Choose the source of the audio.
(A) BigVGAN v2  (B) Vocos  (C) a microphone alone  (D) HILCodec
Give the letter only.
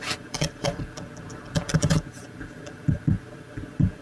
A